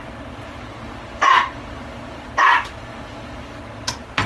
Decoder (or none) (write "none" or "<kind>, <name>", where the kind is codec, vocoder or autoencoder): none